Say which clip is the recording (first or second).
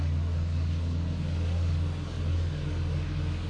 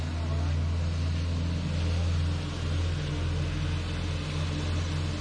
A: second